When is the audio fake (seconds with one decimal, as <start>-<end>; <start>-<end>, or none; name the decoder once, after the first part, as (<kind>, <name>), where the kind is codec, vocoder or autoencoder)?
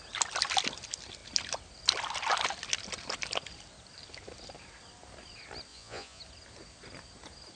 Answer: 5.7-6.2 (vocoder, Vocos)